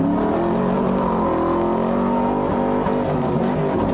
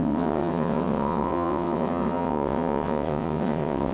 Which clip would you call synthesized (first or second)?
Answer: second